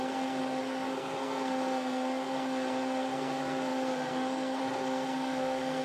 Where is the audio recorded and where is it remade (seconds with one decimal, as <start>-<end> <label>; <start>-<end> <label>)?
0.0-5.8 remade